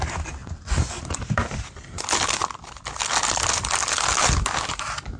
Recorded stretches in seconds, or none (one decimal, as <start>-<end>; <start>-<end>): 0.0-5.2